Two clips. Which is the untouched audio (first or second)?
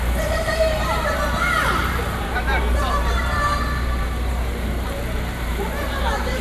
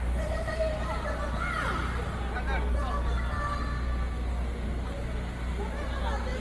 second